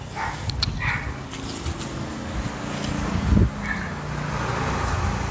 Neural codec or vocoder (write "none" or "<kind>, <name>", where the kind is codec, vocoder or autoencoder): none